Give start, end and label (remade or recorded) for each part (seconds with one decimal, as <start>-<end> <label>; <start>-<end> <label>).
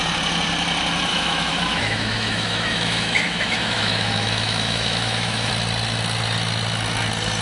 0.0-1.1 recorded; 1.1-5.5 remade; 5.5-7.4 recorded